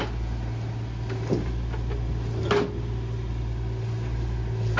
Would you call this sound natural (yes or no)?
yes